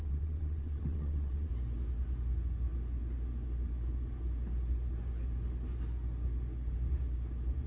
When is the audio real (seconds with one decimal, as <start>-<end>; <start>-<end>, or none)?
1.5-7.7